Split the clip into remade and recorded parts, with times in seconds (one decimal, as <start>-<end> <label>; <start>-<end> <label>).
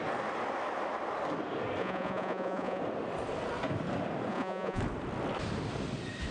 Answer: 0.0-1.8 recorded; 1.8-2.8 remade; 2.8-4.3 recorded; 4.3-4.8 remade; 4.8-6.3 recorded